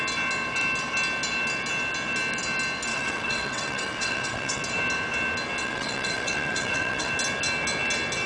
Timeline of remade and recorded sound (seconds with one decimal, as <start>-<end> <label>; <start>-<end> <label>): 0.0-2.9 recorded; 2.9-4.6 remade; 4.6-5.6 recorded; 5.6-7.1 remade; 7.1-8.3 recorded